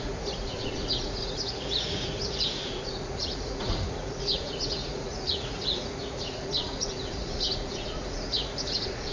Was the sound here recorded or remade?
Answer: remade